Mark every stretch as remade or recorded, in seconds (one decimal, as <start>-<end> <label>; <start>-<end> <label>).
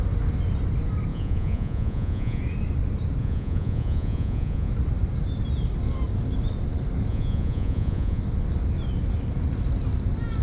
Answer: 0.0-1.1 recorded; 1.1-2.4 remade; 2.4-3.2 recorded; 3.2-4.7 remade; 4.7-7.1 recorded; 7.1-8.2 remade; 8.2-10.4 recorded